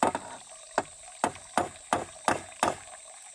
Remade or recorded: recorded